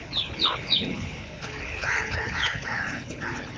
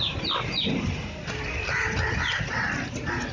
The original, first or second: second